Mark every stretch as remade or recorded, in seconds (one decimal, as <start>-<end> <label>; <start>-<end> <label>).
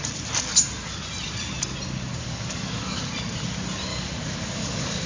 0.0-2.1 recorded; 2.1-3.0 remade; 3.0-3.9 recorded; 3.9-5.1 remade